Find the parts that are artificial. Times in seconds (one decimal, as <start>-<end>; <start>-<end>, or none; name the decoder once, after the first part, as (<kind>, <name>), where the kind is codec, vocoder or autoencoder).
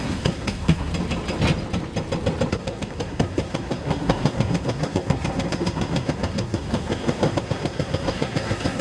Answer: 0.0-0.9 (codec, SNAC); 2.5-8.8